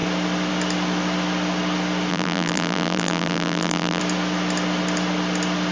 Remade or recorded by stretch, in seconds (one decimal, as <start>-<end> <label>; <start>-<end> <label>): 0.0-2.1 recorded; 2.1-4.0 remade; 4.0-5.7 recorded